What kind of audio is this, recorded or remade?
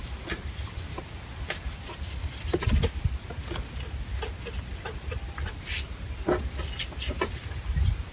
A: recorded